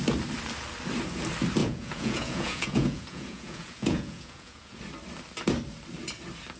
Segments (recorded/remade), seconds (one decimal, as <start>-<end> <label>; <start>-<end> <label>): 0.0-1.6 recorded; 1.6-4.8 remade; 4.8-6.6 recorded